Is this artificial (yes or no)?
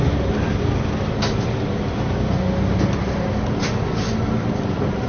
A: no